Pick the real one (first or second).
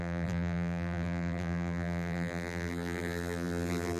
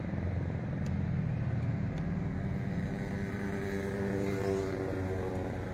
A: second